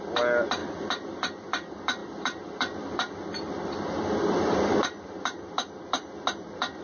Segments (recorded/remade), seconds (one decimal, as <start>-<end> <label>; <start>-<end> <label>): 0.0-0.6 recorded; 0.6-1.5 remade; 1.5-2.0 recorded; 2.0-5.5 remade; 5.5-6.8 recorded